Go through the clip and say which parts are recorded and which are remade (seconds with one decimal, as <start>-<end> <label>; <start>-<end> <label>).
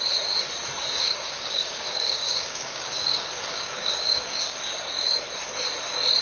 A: 0.0-0.9 recorded; 0.9-4.6 remade; 4.6-6.2 recorded